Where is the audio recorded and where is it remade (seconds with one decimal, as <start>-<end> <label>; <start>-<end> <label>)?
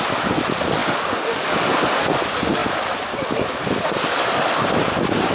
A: 0.0-5.3 recorded